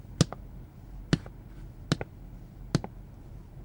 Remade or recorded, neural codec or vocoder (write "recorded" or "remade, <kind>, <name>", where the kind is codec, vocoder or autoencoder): recorded